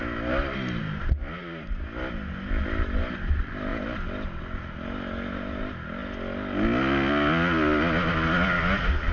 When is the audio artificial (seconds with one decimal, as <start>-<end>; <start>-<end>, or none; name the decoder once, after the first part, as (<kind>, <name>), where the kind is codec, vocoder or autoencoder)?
none

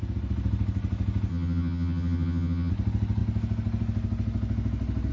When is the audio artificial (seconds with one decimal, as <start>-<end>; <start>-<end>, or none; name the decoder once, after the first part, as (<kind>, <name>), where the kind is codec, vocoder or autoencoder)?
1.3-2.7 (vocoder, HiFi-GAN)

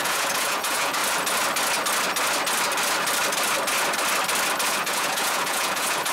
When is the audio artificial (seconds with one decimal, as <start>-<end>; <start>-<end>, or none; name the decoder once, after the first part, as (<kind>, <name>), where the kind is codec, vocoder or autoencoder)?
0.0-1.0 (vocoder, Vocos); 4.7-6.1

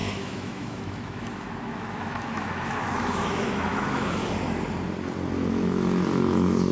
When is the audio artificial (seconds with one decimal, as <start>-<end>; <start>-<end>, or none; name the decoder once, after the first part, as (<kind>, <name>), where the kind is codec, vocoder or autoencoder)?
0.0-4.2 (autoencoder, DAC-VAE); 5.3-6.7

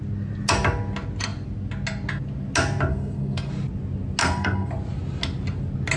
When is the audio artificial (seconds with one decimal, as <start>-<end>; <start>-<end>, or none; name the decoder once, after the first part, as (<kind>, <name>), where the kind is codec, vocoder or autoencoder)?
2.9-3.5 (codec, SNAC); 4.2-4.7

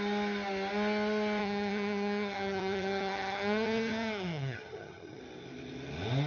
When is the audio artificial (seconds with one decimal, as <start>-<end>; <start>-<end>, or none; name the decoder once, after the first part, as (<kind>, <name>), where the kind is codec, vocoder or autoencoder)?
1.4-5.2 (vocoder, HiFi-GAN)

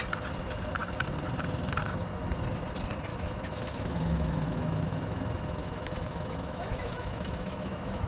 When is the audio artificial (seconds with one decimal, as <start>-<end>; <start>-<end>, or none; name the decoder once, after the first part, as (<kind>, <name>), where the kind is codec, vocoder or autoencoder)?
3.1-8.1 (autoencoder, DAC-VAE)

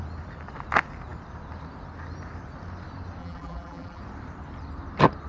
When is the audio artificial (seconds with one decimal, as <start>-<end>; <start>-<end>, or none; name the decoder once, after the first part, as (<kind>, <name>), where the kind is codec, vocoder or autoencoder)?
3.2-4.0 (vocoder, BigVGAN v2)